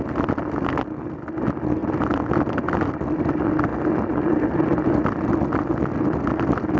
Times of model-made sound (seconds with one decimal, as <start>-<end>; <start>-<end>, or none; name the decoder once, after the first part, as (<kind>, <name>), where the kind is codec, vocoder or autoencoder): none